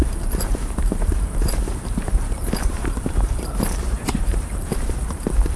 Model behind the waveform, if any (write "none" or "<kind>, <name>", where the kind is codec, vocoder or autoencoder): vocoder, BigVGAN v2